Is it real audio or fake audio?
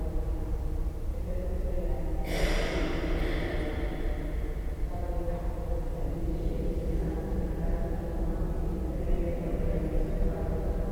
real